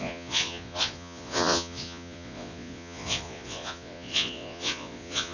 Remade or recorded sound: remade